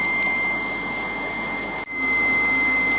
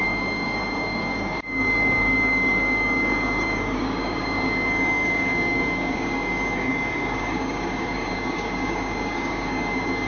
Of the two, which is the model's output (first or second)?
second